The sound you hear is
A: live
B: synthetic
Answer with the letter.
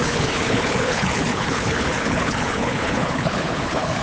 B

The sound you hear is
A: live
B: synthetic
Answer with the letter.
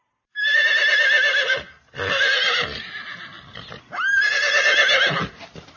A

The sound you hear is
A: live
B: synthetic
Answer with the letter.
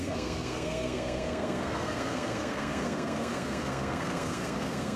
B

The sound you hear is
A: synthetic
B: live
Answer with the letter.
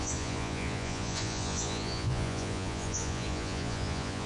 A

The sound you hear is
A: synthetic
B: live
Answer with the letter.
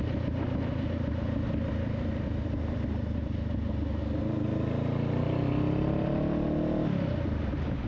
B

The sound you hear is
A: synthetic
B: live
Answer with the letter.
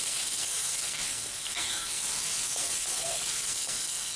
A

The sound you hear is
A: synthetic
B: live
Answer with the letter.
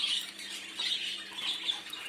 B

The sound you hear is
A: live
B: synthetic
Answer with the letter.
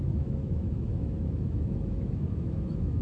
B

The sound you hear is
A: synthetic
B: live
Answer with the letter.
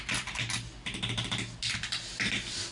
B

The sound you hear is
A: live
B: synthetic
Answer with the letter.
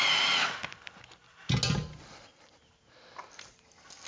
A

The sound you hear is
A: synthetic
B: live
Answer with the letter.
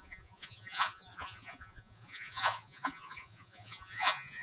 A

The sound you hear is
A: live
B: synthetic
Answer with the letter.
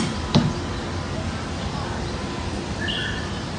A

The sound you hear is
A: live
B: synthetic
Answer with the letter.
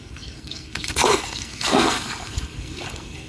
B